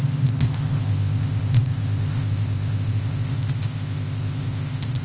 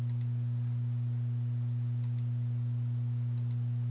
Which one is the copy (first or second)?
first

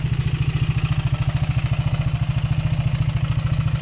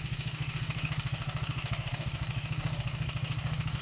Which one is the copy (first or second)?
second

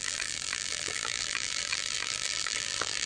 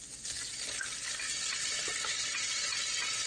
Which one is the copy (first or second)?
first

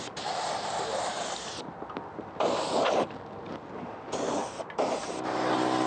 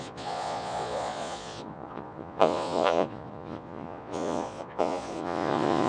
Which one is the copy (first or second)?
second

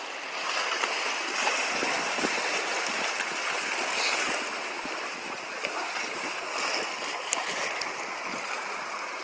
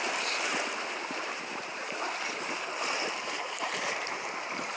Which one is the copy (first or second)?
second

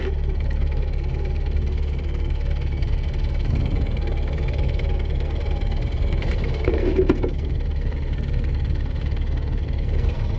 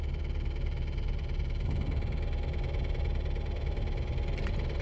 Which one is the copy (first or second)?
first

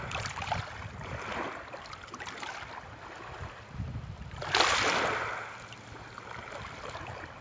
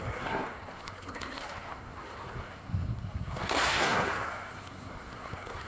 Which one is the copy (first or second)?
second